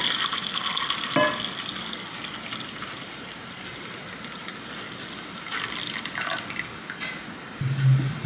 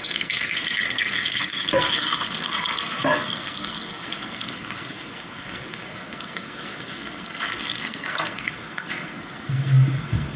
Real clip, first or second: first